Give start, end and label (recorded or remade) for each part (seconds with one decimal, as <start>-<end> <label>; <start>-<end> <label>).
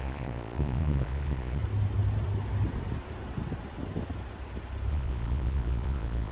0.0-1.6 remade; 1.6-4.9 recorded; 4.9-6.3 remade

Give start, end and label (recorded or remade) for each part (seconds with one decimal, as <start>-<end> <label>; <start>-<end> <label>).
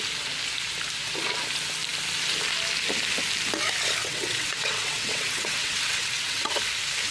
0.0-4.0 recorded; 4.0-6.5 remade; 6.5-7.1 recorded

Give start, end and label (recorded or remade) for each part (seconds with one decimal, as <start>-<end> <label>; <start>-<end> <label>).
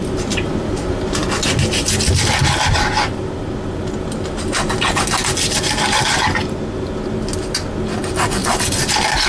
0.0-1.2 remade; 1.2-1.8 recorded; 1.8-3.2 remade; 3.2-8.0 recorded; 8.0-9.3 remade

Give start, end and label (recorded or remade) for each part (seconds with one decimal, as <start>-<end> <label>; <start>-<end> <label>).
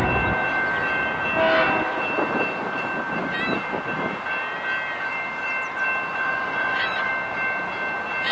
0.0-6.1 recorded; 6.1-7.1 remade; 7.1-8.3 recorded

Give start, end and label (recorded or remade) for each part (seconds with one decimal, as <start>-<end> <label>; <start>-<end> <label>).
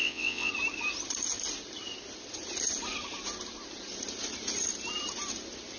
0.0-0.5 remade; 0.5-5.8 recorded